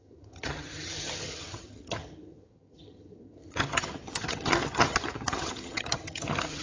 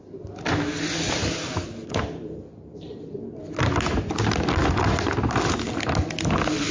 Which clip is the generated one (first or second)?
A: first